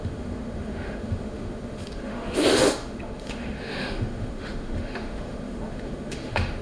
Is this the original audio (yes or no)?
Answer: no